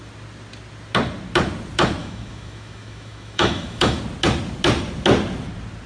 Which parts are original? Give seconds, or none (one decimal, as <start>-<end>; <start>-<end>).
0.0-2.0; 4.0-5.9